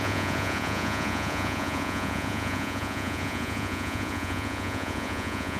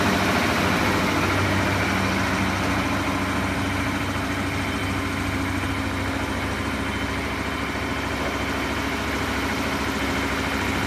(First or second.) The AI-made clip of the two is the first